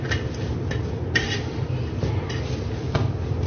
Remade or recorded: remade